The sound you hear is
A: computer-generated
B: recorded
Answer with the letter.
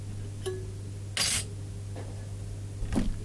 B